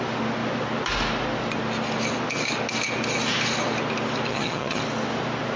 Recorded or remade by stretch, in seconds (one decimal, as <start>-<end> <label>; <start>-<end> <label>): 0.0-4.3 recorded; 4.3-4.8 remade; 4.8-5.6 recorded

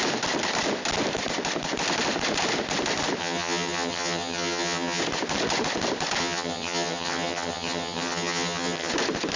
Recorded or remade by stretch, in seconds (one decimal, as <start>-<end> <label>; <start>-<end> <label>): 0.0-3.2 recorded; 3.2-5.0 remade; 5.0-6.2 recorded; 6.2-8.9 remade; 8.9-9.4 recorded

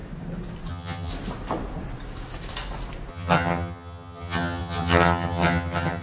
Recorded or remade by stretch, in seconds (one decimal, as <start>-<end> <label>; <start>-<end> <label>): 0.0-0.7 recorded; 0.7-1.1 remade; 1.1-3.1 recorded; 3.1-6.0 remade

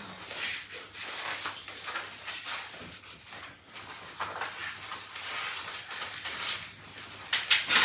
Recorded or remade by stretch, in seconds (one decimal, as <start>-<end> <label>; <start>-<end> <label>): 0.0-7.8 recorded